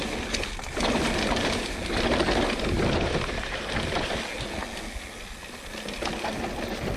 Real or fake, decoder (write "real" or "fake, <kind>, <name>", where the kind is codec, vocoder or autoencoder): real